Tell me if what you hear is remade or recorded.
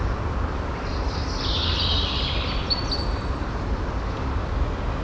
recorded